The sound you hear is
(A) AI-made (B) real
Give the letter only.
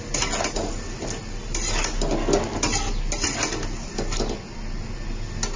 B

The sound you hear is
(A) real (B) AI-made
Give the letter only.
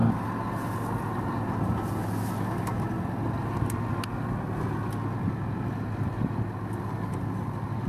A